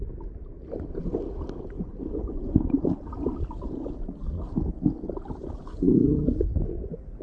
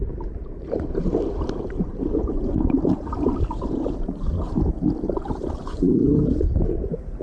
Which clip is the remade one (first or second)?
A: second